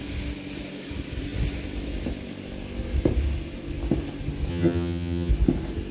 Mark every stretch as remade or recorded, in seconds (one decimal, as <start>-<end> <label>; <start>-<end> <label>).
0.0-4.5 recorded; 4.5-5.3 remade; 5.3-5.9 recorded